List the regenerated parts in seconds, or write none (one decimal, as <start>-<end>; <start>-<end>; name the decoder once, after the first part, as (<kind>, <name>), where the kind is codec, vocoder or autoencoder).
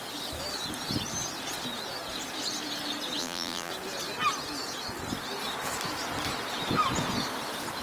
3.2-3.7 (vocoder, BigVGAN v2)